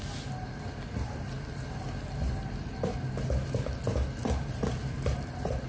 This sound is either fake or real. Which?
real